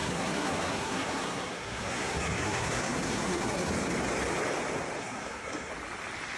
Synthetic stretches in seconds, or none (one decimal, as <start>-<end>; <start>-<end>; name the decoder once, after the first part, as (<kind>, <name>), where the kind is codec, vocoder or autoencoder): 0.0-3.7 (codec, SNAC); 5.0-5.7